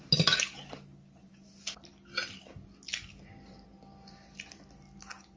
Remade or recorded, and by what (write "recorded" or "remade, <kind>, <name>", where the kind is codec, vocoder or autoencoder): recorded